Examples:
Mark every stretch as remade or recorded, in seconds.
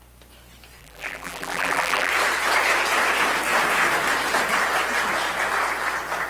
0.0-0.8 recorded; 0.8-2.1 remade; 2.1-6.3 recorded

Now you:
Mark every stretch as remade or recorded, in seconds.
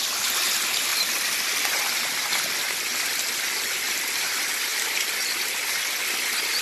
0.0-6.6 recorded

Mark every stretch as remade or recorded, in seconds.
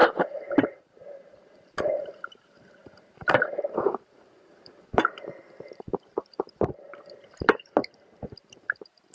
0.0-9.1 remade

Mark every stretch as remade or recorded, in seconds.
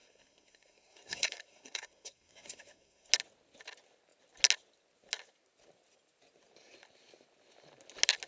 0.0-3.1 remade; 3.1-8.3 recorded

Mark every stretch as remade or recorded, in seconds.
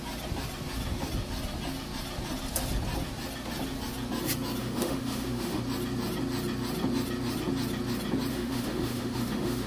0.0-4.6 recorded; 4.6-5.6 remade; 5.6-8.3 recorded; 8.3-9.7 remade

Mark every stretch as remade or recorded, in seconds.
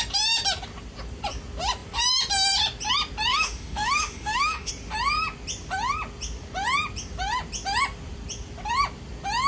0.0-3.3 recorded; 3.3-4.7 remade; 4.7-9.5 recorded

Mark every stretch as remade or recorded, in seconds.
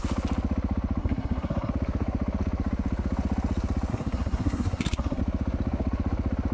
0.0-1.0 recorded; 1.0-1.7 remade; 1.7-3.9 recorded; 3.9-5.2 remade; 5.2-6.5 recorded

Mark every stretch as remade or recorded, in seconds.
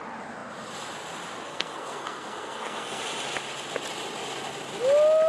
0.0-1.5 recorded; 1.5-3.0 remade; 3.0-5.3 recorded